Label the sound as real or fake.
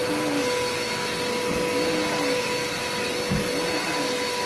real